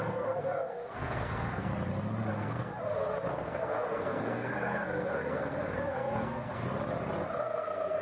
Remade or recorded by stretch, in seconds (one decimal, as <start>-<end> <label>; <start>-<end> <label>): 0.0-1.7 remade; 1.7-2.3 recorded; 2.3-2.7 remade; 2.7-3.3 recorded; 3.3-6.6 remade; 6.6-7.4 recorded; 7.4-8.0 remade